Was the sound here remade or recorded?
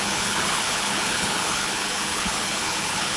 remade